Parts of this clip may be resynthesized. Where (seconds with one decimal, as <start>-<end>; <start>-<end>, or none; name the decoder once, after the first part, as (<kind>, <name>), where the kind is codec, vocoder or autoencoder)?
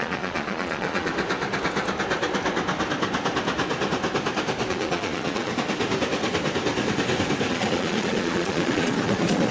0.0-1.1 (vocoder, Vocos); 4.7-5.5; 7.5-9.5